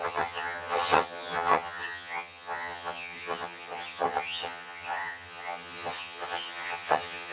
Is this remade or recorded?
remade